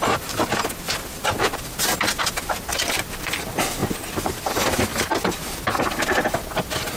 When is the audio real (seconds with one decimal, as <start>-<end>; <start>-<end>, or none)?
0.0-7.0